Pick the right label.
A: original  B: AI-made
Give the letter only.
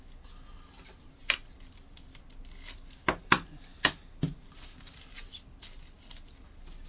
A